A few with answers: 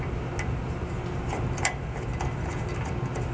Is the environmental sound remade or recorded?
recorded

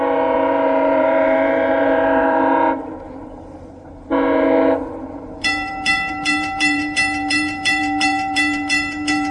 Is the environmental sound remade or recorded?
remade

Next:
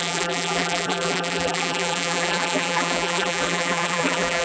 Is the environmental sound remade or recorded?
remade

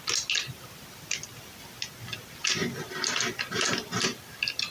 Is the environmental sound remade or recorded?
recorded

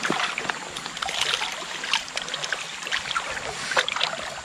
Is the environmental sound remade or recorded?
recorded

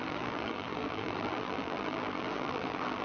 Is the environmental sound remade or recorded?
remade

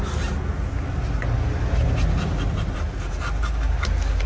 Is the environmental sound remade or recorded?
recorded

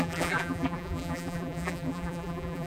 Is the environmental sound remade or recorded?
remade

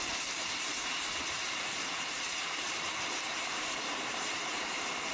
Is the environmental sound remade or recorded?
remade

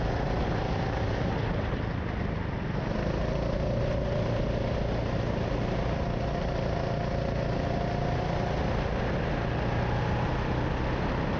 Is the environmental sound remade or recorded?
recorded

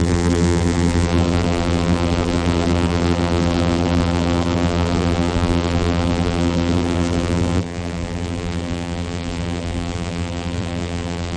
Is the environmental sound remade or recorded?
remade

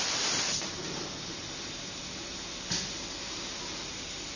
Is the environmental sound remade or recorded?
recorded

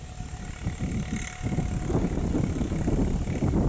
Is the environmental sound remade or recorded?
recorded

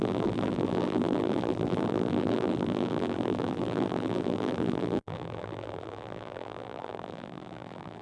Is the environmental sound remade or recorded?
remade